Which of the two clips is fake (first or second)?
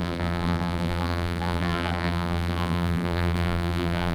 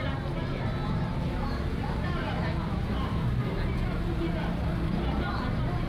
first